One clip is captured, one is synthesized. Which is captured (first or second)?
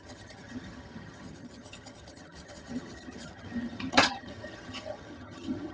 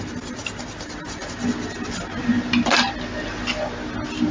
second